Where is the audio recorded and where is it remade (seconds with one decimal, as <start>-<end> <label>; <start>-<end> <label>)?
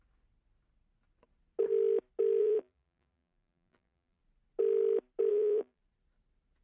0.0-2.4 recorded; 2.4-4.2 remade; 4.2-5.3 recorded; 5.3-5.8 remade; 5.8-6.6 recorded